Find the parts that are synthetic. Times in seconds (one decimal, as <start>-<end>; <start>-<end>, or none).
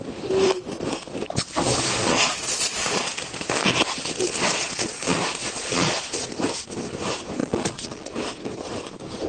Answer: 2.0-3.1; 4.5-6.1; 7.4-8.1